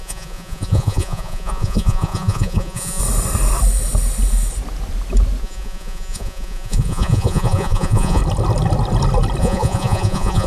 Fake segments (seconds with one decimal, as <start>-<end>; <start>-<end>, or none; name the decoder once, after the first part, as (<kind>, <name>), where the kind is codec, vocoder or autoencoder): 0.0-3.0 (vocoder, Vocos); 5.4-8.2; 9.4-10.5